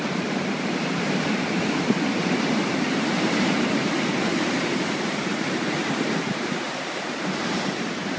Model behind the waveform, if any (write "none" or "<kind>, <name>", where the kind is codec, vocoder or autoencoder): vocoder, BigVGAN v2